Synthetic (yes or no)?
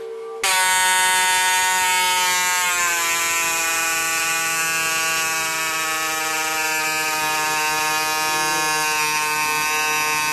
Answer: no